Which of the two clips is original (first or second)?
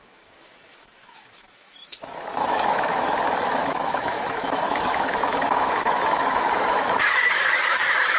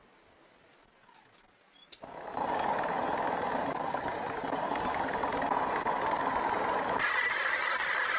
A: second